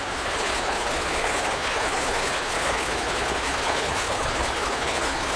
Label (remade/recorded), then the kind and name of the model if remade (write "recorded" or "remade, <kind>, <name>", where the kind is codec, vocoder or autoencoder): remade, codec, HILCodec